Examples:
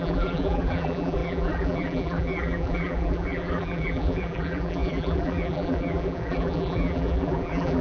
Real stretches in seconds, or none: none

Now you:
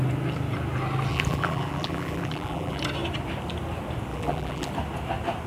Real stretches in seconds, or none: 0.0-1.1; 2.8-4.1; 4.7-5.5

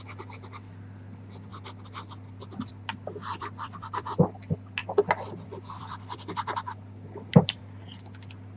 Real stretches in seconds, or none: 0.0-3.3; 4.1-4.8; 7.6-8.6

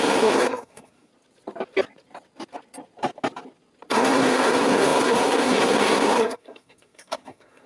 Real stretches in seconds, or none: 1.1-3.9